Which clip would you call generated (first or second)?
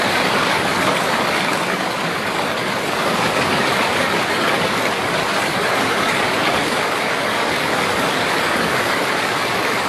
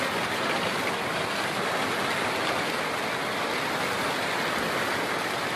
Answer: first